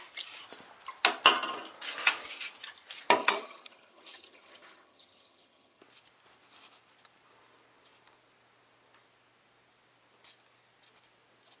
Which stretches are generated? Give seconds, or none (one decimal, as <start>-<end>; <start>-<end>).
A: 3.2-5.8